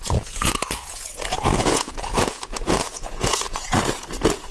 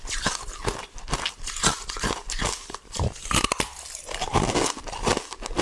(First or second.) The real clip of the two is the second